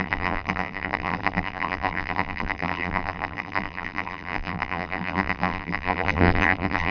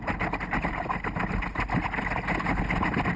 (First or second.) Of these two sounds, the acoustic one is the second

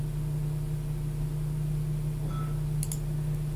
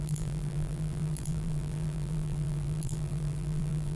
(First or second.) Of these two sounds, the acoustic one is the first